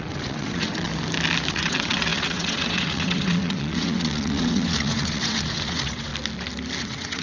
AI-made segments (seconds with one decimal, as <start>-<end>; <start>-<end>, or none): 0.0-0.9; 1.5-6.1; 6.8-7.2

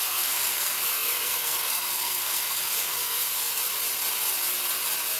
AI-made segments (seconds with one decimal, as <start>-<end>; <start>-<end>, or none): 0.0-3.6

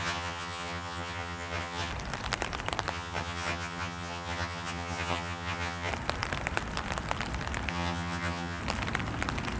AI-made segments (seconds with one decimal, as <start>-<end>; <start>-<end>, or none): 0.0-1.9; 2.9-5.9; 7.7-8.6

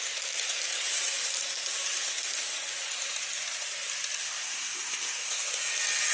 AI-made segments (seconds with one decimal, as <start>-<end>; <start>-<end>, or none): 4.2-5.5

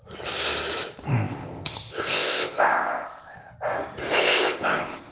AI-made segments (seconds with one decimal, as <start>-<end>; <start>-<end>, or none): 1.1-3.5; 4.2-5.1

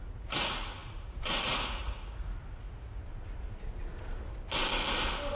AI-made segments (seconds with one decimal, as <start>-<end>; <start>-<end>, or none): 0.0-3.0

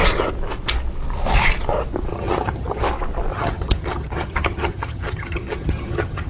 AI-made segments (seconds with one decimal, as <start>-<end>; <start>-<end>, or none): 2.1-2.8; 3.3-6.3